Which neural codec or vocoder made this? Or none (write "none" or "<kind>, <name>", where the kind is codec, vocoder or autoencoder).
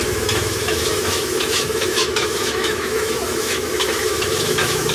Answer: autoencoder, DAC-VAE